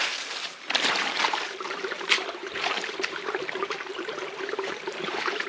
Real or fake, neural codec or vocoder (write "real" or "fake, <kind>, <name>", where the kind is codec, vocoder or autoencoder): fake, vocoder, BigVGAN v2